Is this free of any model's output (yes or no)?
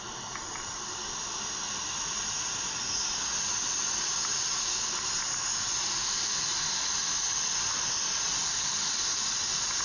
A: yes